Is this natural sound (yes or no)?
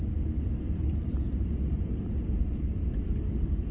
yes